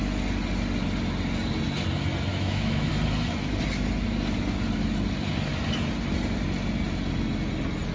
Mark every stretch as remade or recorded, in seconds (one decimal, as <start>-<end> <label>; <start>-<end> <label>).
0.0-2.3 recorded; 2.3-2.9 remade; 2.9-7.9 recorded